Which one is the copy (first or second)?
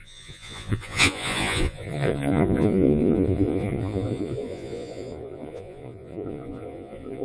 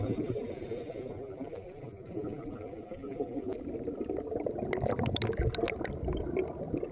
first